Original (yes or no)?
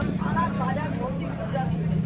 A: no